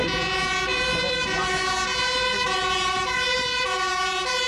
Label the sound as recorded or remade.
recorded